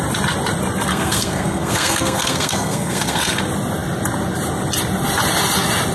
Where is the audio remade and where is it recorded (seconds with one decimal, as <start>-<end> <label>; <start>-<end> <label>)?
0.0-0.9 recorded; 0.9-3.2 remade; 3.2-5.9 recorded